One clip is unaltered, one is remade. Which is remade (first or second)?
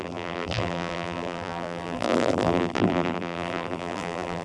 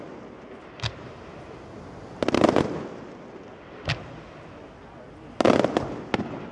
first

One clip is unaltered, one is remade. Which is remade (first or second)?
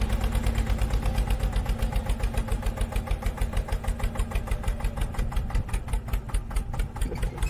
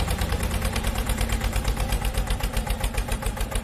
second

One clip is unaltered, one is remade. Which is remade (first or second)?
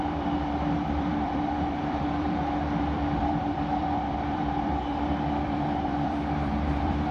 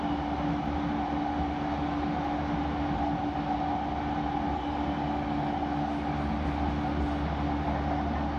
first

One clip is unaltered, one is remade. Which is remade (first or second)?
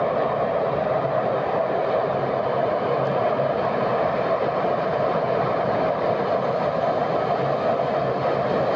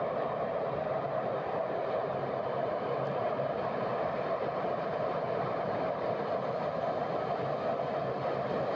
second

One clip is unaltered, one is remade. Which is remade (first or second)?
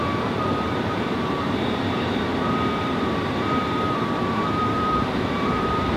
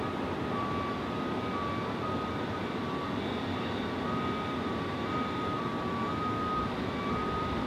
first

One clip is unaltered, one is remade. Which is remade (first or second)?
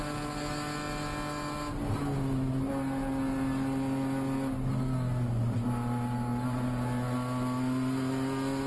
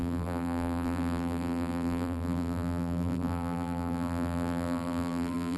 second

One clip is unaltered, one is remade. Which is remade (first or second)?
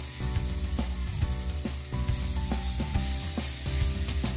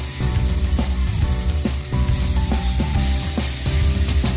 second